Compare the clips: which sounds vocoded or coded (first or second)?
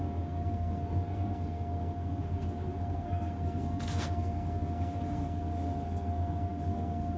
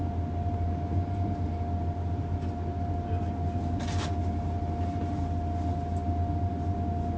first